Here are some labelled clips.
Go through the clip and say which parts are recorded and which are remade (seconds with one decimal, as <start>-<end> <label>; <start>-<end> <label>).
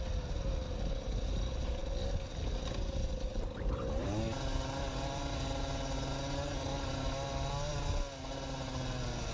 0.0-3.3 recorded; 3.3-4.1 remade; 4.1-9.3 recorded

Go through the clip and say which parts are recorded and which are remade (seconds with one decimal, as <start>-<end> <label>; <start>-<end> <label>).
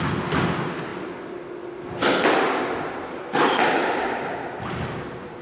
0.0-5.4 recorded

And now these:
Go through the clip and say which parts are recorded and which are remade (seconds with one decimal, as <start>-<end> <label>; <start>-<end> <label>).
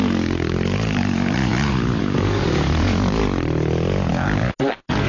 0.0-1.5 remade; 1.5-2.0 recorded; 2.0-3.2 remade; 3.2-4.1 recorded; 4.1-5.1 remade